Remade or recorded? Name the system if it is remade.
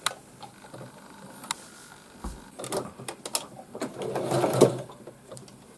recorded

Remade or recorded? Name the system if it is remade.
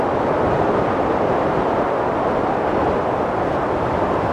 recorded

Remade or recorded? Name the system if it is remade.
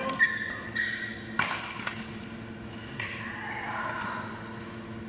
recorded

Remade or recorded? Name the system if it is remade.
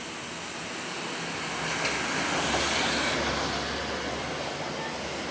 recorded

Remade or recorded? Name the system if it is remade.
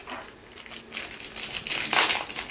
recorded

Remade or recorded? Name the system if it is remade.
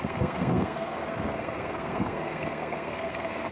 remade, codec, SNAC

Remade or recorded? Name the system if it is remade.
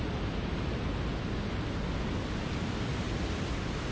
recorded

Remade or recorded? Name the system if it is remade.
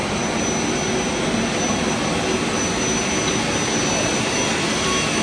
recorded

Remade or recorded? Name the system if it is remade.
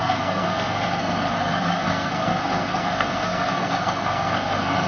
remade, codec, SNAC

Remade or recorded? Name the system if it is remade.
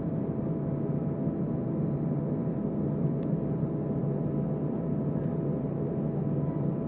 recorded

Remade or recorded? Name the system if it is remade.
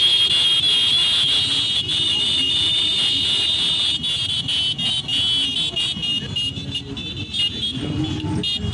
recorded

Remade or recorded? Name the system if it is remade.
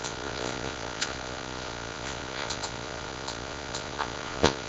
remade, vocoder, Vocos